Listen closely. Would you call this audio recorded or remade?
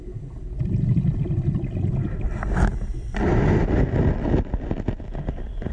recorded